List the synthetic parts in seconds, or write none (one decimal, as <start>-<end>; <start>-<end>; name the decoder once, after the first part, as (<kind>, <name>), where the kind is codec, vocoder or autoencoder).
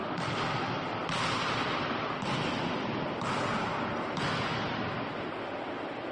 none